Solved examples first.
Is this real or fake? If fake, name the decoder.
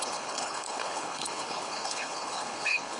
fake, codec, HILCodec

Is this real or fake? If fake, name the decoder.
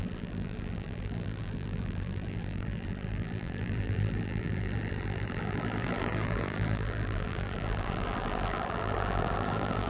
fake, vocoder, BigVGAN v2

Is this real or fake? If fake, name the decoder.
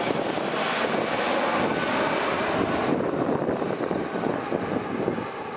real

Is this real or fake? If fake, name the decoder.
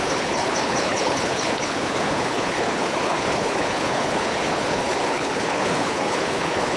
fake, codec, HILCodec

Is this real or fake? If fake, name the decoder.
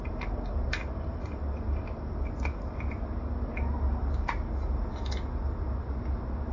real